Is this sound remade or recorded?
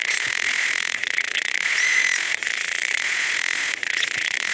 remade